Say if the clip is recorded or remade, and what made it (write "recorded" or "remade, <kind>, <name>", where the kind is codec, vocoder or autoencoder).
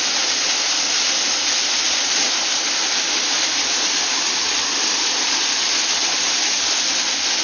recorded